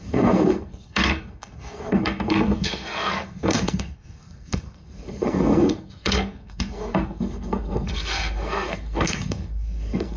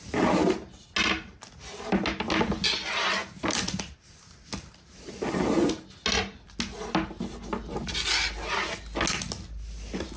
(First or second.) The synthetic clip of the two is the first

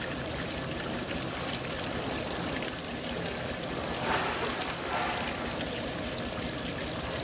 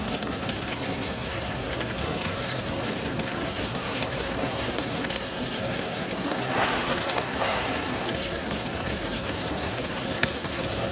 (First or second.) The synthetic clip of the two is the second